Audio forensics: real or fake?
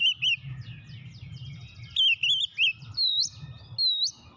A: real